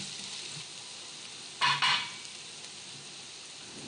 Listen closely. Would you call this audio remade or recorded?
recorded